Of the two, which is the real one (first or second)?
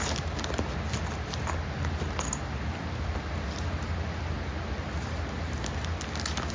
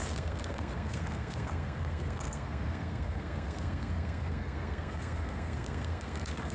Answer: first